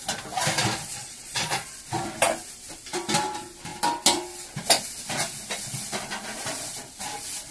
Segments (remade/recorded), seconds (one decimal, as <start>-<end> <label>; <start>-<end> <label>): 0.0-0.9 recorded; 0.9-1.8 remade; 1.8-7.5 recorded